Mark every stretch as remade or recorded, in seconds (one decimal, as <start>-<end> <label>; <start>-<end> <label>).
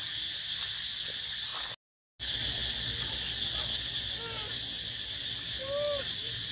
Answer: 0.0-1.5 remade; 1.5-2.2 recorded; 2.2-2.6 remade; 2.6-6.1 recorded; 6.1-6.5 remade